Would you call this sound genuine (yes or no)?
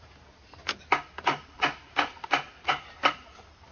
yes